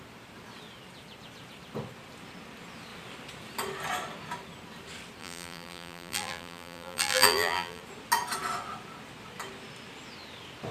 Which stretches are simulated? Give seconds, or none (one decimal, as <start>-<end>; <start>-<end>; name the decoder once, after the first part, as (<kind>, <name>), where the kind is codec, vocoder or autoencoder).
5.2-7.8 (vocoder, BigVGAN v2)

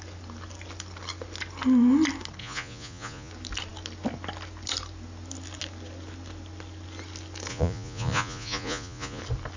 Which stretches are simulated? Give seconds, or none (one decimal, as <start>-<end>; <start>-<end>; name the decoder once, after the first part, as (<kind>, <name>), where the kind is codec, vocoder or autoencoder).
2.4-3.3 (vocoder, Vocos); 7.5-9.2

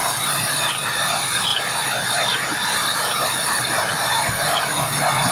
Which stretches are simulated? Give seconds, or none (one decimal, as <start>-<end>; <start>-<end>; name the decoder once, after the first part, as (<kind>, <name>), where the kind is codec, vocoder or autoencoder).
0.0-0.7 (vocoder, BigVGAN v2); 1.5-4.1

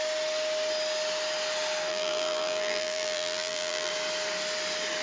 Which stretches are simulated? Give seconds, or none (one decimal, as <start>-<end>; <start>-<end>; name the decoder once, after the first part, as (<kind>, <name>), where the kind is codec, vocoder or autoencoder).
1.9-3.9 (vocoder, BigVGAN v2)

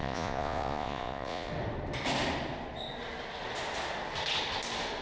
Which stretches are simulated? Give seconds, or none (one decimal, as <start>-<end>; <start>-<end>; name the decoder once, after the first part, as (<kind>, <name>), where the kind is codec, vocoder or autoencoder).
0.0-1.5 (vocoder, Vocos)

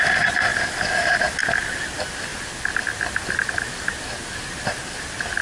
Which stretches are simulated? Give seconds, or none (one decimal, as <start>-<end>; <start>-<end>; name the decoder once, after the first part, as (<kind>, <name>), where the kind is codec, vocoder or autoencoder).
none

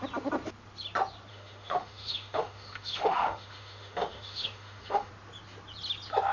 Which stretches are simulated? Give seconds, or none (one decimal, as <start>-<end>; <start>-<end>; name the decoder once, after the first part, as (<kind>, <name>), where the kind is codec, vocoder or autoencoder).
1.3-5.1 (autoencoder, DAC-VAE)

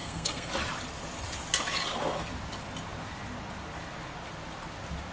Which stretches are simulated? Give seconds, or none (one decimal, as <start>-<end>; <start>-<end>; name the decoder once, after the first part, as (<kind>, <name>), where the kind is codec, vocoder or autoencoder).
0.0-0.5 (codec, SNAC)